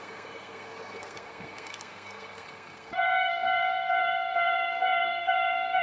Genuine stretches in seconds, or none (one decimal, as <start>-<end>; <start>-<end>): none